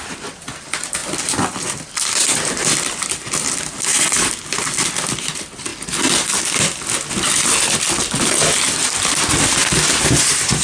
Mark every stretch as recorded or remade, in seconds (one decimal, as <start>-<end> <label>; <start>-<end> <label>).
0.0-5.7 remade; 5.7-7.3 recorded; 7.3-10.6 remade